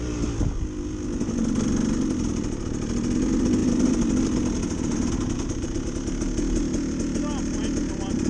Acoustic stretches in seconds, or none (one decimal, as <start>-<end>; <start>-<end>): 0.0-8.3

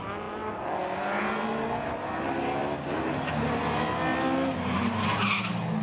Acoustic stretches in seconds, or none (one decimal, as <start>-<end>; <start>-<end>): 0.0-5.8

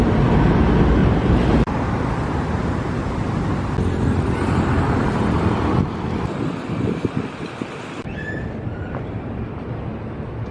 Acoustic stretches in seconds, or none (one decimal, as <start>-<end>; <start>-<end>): 0.0-1.0; 2.0-10.5

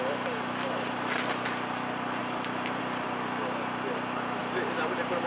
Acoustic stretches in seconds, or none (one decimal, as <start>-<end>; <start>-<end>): 0.0-2.2; 2.8-4.4